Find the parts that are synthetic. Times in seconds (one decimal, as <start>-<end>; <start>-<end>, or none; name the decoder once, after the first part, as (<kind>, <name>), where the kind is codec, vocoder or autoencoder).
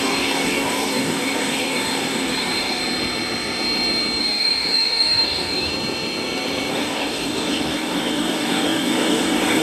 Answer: 0.0-2.8 (codec, DAC); 4.2-5.7; 6.7-9.6